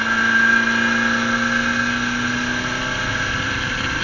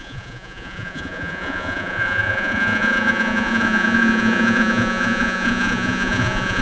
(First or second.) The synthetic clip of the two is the second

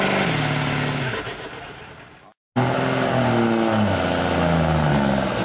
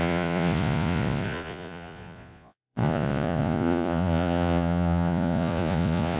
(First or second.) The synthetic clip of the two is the second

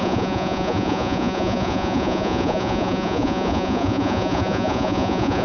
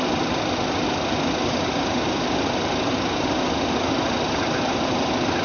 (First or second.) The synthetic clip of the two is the first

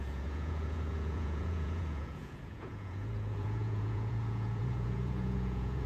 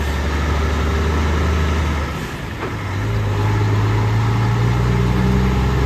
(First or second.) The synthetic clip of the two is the first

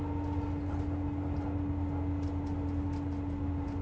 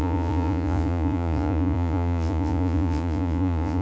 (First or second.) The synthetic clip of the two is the second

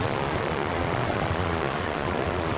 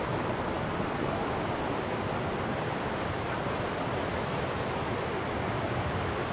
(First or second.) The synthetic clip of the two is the first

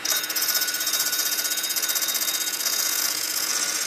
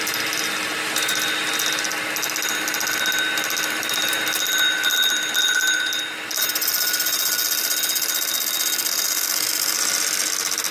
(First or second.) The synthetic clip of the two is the first